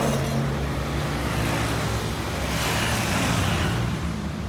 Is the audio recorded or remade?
recorded